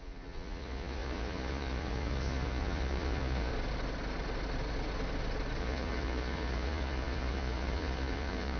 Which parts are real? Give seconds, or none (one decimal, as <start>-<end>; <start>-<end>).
3.5-5.6